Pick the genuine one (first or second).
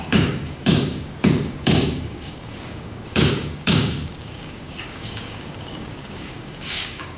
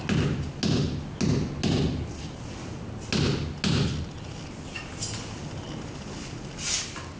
second